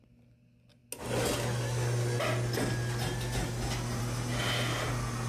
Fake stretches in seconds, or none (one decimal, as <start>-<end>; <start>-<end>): none